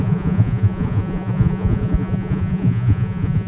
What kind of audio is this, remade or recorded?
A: remade